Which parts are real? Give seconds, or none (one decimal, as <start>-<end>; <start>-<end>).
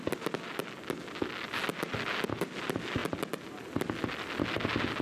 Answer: 0.0-5.0